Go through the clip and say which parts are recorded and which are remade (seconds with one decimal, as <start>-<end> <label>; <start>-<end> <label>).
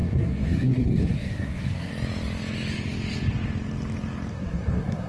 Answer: 0.0-1.9 remade; 1.9-4.3 recorded; 4.3-5.1 remade